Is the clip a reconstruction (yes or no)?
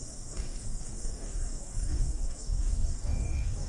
yes